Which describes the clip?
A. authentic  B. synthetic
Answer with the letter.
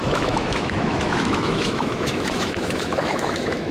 B